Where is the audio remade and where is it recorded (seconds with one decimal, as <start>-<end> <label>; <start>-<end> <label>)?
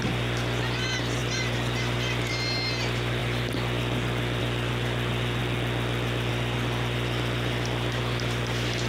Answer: 0.0-5.4 remade; 5.4-6.3 recorded; 6.3-8.9 remade